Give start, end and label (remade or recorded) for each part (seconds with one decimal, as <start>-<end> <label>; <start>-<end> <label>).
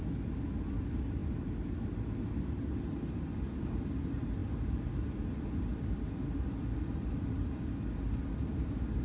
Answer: 0.0-9.0 recorded